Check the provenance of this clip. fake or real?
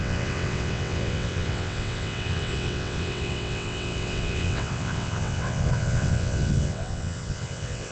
fake